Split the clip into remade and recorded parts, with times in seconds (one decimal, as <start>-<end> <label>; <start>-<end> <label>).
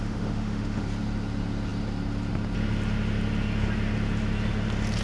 0.0-0.8 remade; 0.8-5.0 recorded